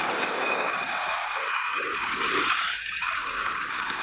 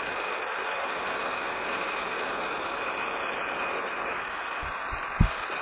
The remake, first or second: first